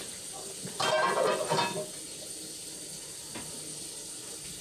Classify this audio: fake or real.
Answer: real